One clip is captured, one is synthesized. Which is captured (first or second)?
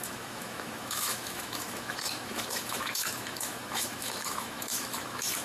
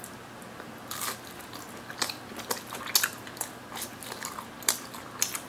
second